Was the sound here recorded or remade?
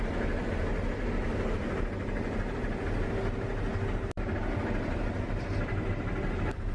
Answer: recorded